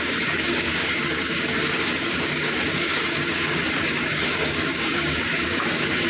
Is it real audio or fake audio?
fake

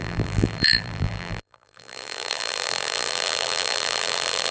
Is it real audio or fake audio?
fake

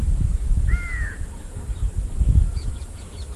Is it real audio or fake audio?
fake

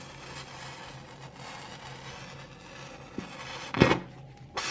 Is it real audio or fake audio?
real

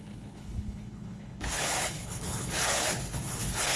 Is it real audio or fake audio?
fake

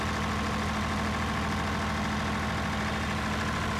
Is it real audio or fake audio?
real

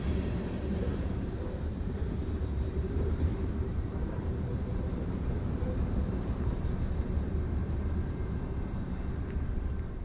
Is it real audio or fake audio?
fake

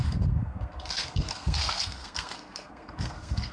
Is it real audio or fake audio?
fake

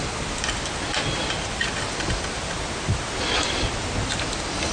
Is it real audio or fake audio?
real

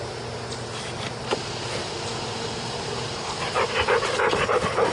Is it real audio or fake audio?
fake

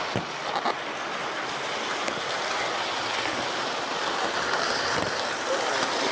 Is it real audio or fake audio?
real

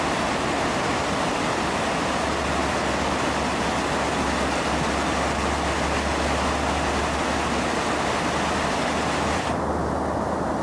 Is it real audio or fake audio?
real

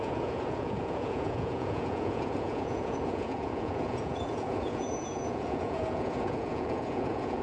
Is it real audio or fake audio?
fake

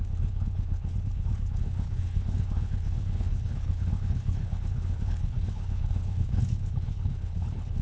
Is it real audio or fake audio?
fake